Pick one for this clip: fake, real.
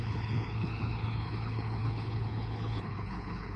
fake